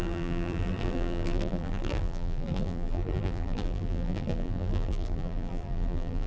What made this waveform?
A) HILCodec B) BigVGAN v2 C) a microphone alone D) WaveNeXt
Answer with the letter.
B